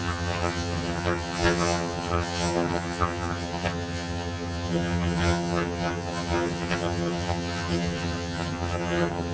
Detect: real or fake fake